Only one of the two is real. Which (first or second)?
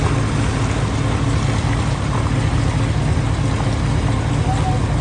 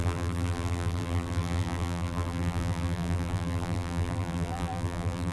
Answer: first